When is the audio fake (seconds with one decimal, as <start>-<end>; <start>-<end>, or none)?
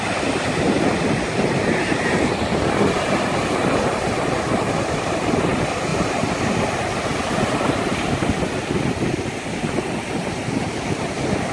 5.9-6.5